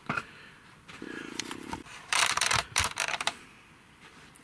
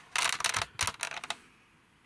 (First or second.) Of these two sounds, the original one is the second